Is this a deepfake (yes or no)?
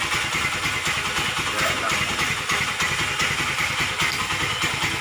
no